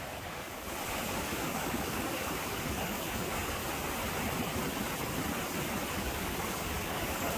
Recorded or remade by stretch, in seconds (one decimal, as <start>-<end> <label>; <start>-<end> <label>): 0.0-3.6 remade; 3.6-5.9 recorded; 5.9-7.4 remade